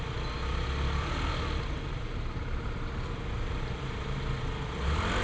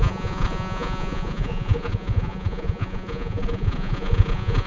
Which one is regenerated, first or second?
second